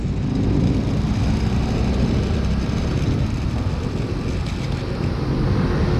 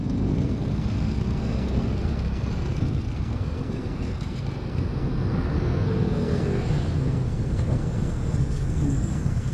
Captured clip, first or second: first